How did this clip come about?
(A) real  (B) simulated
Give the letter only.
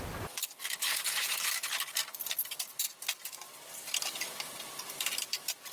B